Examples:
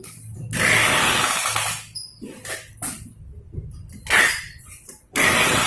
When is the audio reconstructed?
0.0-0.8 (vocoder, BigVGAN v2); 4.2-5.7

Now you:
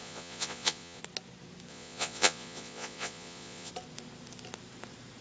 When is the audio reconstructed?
0.0-1.0 (vocoder, Vocos); 1.7-3.7

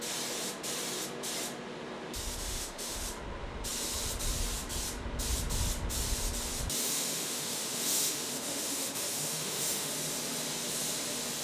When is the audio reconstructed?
2.4-3.0 (autoencoder, DAC-VAE); 6.8-9.9

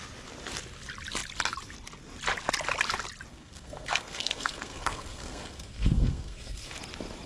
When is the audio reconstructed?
3.3-6.7 (codec, SNAC)

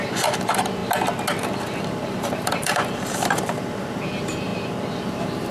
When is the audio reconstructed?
0.0-0.8 (vocoder, BigVGAN v2); 1.8-4.5; 5.0-5.5